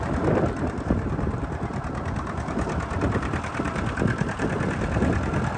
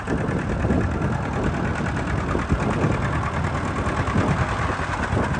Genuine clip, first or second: second